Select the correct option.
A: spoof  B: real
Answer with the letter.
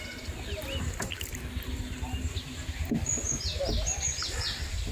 B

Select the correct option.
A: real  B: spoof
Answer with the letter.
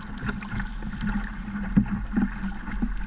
A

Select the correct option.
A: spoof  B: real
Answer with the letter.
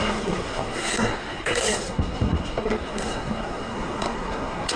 A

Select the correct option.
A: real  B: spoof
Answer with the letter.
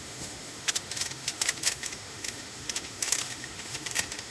B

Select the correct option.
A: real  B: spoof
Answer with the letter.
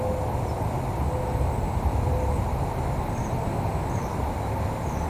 A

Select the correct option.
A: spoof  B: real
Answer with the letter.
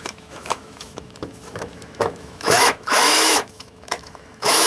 A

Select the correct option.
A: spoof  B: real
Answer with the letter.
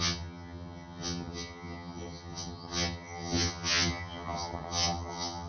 A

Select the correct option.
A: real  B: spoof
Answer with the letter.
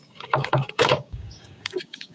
B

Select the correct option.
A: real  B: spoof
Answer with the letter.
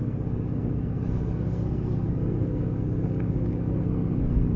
B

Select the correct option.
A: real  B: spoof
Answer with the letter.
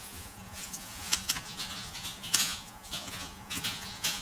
B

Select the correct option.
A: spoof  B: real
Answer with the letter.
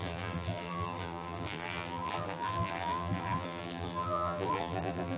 A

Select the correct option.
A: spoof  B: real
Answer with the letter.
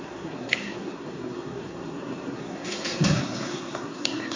A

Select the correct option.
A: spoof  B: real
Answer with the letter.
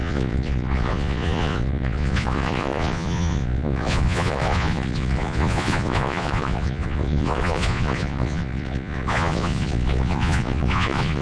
A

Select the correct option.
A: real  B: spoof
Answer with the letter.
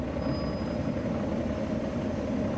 A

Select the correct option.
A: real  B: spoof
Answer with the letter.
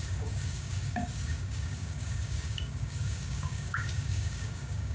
B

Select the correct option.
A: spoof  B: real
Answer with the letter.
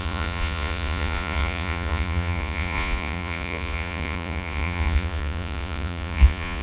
A